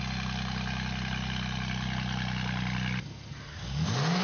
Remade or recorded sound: recorded